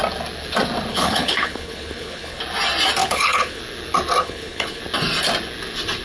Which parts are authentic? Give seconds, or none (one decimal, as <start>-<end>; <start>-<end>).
0.0-0.9; 2.4-3.0; 3.6-4.2; 4.8-6.0